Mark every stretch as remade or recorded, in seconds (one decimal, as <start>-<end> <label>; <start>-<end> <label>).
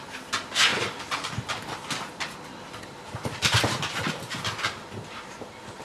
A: 0.0-5.8 recorded